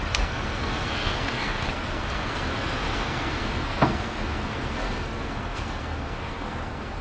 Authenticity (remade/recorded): remade